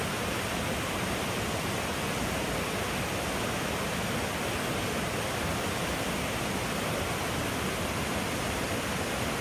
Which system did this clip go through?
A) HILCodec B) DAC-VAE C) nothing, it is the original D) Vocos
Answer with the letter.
C